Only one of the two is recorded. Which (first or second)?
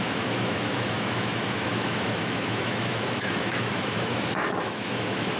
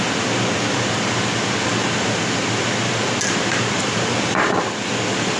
second